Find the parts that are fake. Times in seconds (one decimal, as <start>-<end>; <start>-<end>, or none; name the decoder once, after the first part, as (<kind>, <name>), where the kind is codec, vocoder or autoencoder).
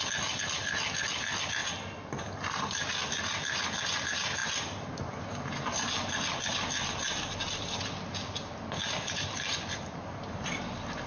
none